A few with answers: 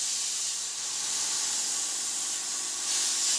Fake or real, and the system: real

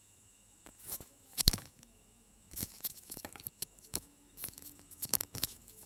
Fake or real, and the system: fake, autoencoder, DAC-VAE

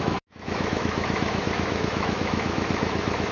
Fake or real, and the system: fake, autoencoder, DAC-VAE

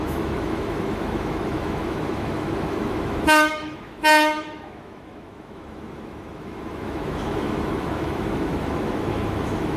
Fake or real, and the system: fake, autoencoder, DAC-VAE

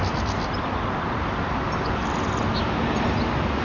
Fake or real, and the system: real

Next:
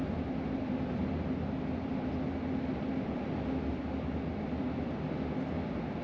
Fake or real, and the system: real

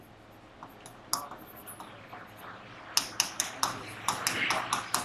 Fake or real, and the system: real